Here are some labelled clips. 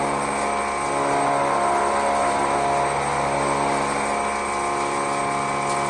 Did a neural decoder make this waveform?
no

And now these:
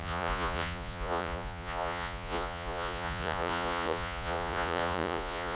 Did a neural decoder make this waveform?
yes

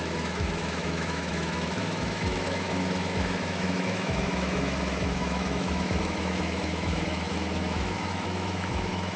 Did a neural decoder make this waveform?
yes